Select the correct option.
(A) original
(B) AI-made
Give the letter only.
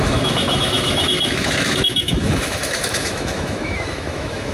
B